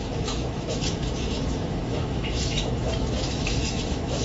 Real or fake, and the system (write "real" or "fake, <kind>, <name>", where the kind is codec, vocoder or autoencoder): fake, autoencoder, DAC-VAE